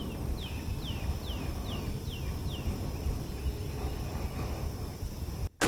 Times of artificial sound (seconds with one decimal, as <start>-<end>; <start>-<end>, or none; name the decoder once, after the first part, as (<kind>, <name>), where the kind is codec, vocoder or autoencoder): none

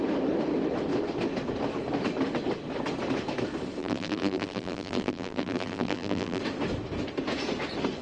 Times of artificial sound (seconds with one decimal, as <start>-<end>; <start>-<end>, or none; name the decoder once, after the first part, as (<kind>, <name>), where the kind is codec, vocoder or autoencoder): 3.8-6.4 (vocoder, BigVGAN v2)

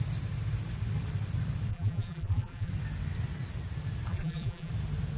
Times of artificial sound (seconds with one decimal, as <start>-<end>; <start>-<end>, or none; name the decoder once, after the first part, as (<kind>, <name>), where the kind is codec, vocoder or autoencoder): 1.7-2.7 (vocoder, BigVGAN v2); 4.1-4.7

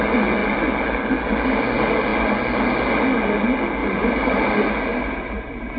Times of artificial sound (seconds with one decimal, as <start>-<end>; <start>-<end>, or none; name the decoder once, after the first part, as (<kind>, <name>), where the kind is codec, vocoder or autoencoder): 3.8-4.5 (vocoder, BigVGAN v2); 4.9-5.8